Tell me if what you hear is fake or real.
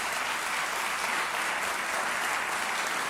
real